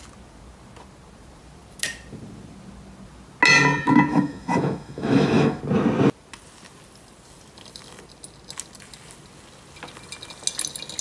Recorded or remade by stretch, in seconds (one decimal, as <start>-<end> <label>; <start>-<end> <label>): 0.0-4.1 recorded; 4.1-5.6 remade; 5.6-11.0 recorded